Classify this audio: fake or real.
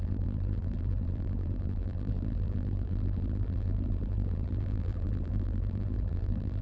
fake